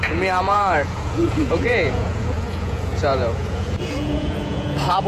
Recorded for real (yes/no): no